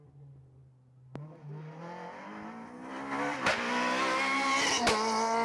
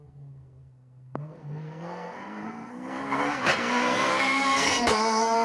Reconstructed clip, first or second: second